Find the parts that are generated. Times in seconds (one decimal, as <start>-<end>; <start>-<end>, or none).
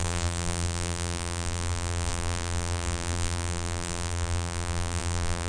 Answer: 0.0-5.5